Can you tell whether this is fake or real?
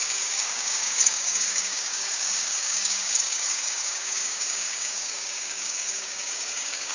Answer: fake